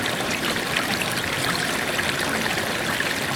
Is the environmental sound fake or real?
fake